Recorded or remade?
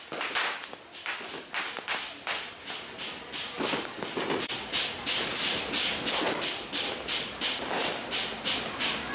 recorded